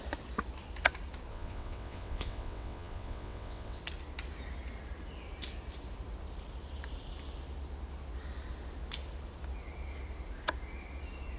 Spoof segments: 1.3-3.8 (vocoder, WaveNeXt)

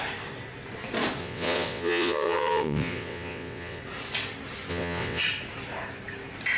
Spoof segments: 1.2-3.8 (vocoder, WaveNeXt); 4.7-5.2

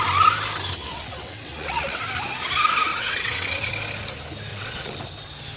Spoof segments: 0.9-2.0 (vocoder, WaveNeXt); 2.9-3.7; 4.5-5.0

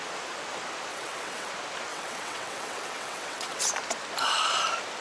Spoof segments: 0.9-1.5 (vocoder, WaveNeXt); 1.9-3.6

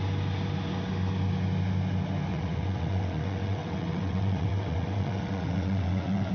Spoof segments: 2.3-6.3 (vocoder, WaveNeXt)